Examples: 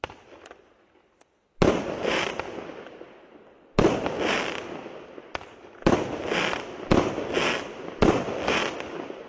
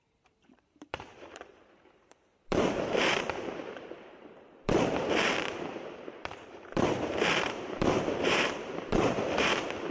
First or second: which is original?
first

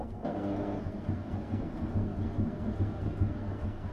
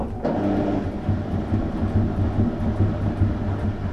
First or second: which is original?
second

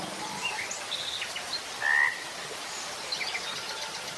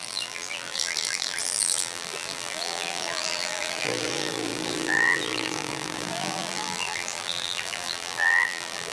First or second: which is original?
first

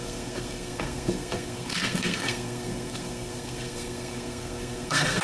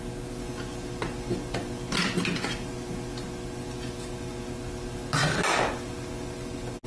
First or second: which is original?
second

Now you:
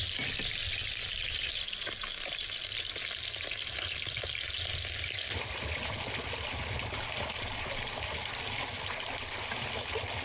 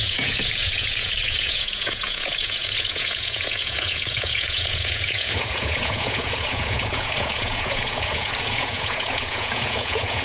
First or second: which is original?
first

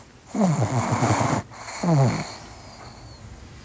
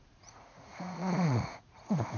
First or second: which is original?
first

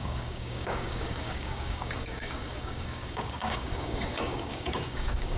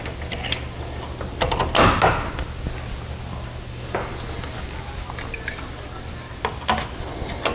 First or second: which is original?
second